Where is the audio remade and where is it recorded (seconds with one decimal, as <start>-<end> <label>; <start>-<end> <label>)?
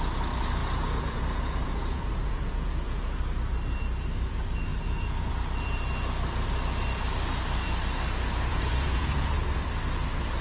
0.0-0.6 recorded; 0.6-3.2 remade; 3.2-4.7 recorded; 4.7-5.3 remade; 5.3-8.5 recorded; 8.5-9.4 remade; 9.4-10.4 recorded